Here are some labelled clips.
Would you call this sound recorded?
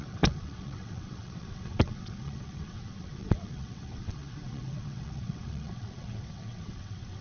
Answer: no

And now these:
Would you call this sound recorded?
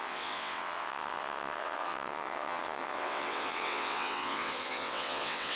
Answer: no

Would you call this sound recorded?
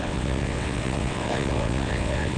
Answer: no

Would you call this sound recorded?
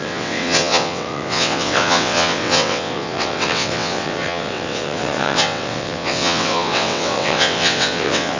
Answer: no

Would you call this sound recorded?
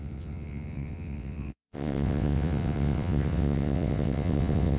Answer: no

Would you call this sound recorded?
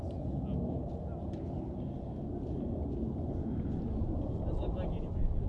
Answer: yes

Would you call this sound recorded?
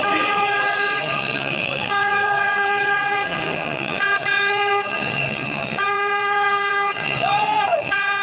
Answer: no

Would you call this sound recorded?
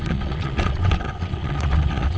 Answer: no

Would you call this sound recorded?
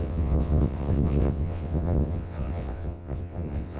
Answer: no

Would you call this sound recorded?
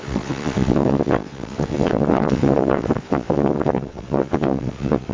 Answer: no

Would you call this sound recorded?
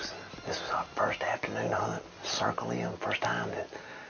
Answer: yes